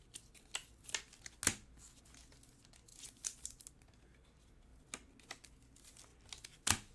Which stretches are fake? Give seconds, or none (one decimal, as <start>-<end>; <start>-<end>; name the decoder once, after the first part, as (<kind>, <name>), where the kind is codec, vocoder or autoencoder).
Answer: none